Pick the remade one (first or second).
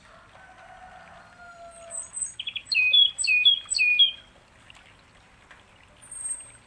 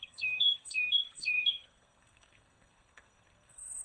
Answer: second